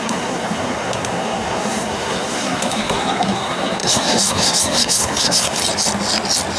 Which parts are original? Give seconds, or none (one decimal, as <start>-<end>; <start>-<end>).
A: 5.6-6.6